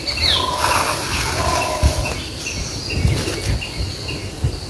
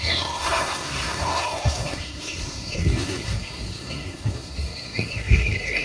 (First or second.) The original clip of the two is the first